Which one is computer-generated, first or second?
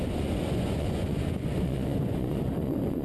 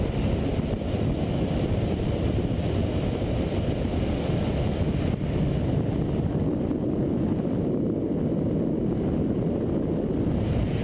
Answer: first